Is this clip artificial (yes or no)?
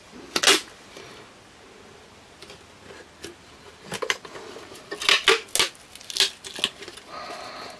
no